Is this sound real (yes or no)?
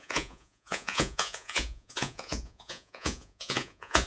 no